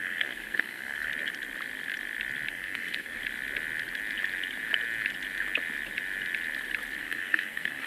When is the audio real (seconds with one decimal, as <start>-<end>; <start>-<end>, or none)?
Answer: 1.1-2.5; 3.2-7.0